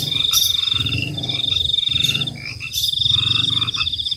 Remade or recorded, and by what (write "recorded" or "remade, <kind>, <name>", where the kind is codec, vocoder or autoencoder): remade, vocoder, BigVGAN v2